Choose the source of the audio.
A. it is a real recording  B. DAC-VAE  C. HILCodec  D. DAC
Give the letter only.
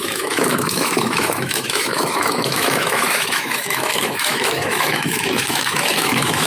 B